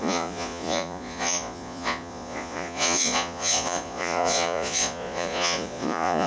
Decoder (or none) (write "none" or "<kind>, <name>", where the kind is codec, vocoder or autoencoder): vocoder, Vocos